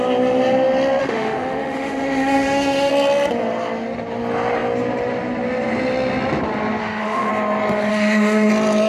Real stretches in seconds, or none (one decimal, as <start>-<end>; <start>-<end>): 0.0-1.0; 2.9-6.8; 7.3-7.9; 8.5-8.9